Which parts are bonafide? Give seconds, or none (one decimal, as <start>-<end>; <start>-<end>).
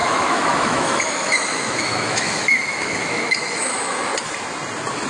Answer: 4.1-5.1